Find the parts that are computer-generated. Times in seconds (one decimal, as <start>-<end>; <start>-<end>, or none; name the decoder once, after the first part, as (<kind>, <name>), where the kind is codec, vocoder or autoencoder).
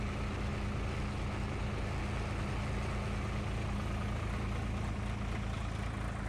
none